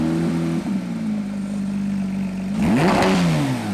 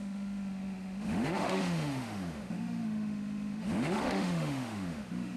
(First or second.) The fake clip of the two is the second